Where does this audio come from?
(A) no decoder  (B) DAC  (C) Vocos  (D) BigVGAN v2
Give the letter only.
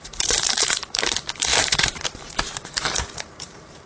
D